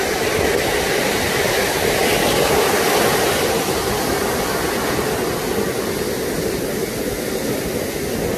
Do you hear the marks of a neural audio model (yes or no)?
no